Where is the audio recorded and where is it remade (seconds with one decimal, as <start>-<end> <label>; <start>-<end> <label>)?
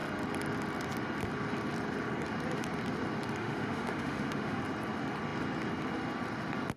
0.0-3.4 recorded; 3.4-4.6 remade; 4.6-6.8 recorded